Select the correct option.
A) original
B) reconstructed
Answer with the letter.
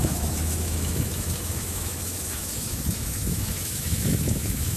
B